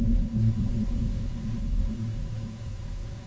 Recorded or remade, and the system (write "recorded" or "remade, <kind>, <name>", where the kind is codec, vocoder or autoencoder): remade, codec, SNAC